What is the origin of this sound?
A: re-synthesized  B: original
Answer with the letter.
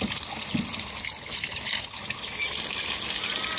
B